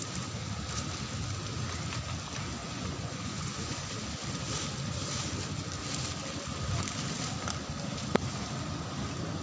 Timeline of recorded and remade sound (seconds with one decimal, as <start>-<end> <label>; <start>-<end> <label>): 0.0-2.6 recorded; 2.6-3.9 remade; 3.9-9.4 recorded